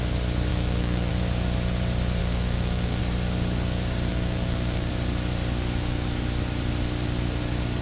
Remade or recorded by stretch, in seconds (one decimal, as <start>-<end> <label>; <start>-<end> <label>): 0.0-0.5 recorded; 0.5-1.1 remade; 1.1-2.2 recorded; 2.2-3.0 remade; 3.0-4.1 recorded; 4.1-4.9 remade; 4.9-7.8 recorded